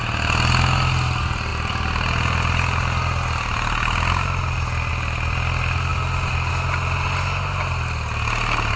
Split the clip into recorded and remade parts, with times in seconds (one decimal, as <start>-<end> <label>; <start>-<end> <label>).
0.0-8.8 recorded